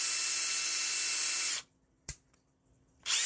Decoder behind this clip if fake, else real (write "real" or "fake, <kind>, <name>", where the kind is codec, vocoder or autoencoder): real